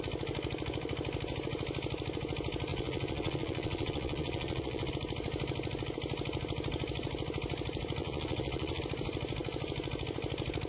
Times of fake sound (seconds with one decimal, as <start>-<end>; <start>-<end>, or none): 2.7-4.9; 8.0-8.8